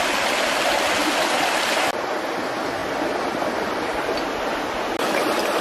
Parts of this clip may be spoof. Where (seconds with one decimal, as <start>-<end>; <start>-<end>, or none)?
none